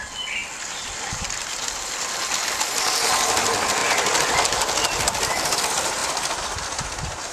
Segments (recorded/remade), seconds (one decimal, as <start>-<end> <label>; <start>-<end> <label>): 0.0-7.3 recorded